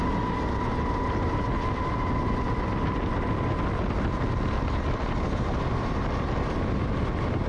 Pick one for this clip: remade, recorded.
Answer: recorded